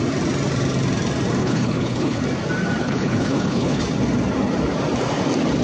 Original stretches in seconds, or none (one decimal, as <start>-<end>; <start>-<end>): 0.0-1.4; 2.2-2.8; 3.8-5.6